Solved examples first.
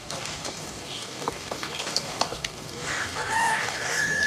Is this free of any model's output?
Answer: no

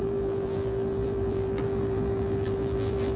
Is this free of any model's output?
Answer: no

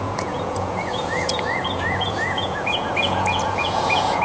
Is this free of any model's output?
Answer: no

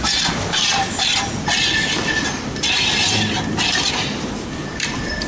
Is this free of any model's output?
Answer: yes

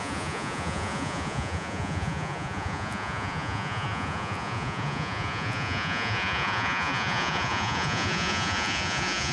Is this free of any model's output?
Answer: no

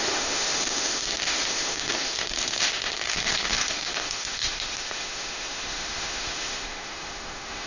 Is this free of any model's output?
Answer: no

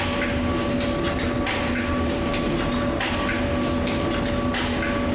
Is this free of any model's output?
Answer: yes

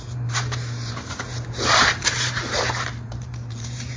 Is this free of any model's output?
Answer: no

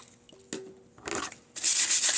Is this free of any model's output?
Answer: yes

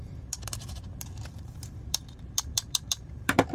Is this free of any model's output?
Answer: no